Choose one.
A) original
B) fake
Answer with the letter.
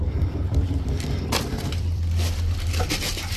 B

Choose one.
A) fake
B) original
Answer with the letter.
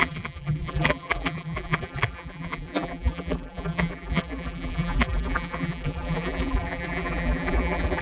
A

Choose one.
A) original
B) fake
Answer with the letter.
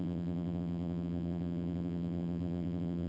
B